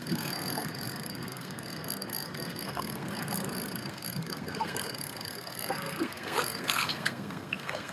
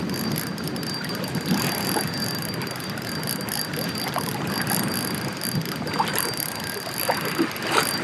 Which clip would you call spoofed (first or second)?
first